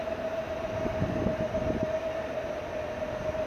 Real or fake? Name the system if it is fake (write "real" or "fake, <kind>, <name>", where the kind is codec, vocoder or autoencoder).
real